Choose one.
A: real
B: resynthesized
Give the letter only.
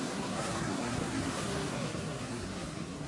B